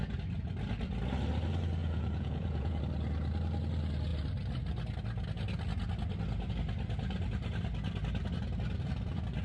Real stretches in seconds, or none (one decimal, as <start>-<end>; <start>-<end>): 0.0-1.8; 2.8-9.4